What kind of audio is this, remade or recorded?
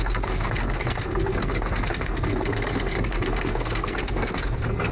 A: remade